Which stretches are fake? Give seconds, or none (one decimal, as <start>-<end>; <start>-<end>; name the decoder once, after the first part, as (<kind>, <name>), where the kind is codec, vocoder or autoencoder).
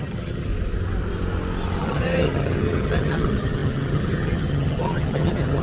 0.0-0.5 (vocoder, HiFi-GAN); 1.8-5.6